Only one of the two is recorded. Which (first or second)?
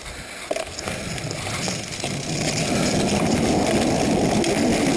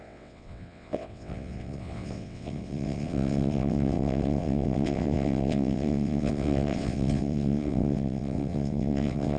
first